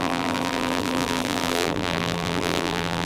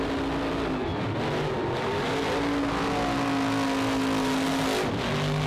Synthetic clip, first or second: first